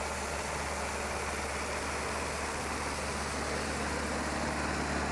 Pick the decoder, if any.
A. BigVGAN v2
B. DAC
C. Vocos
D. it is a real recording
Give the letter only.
D